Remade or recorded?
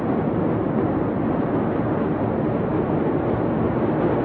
recorded